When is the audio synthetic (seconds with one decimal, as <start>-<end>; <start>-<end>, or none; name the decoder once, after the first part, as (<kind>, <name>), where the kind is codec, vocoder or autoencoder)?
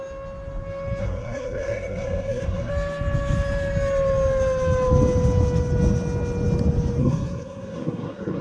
1.0-2.7 (codec, SNAC); 7.0-8.4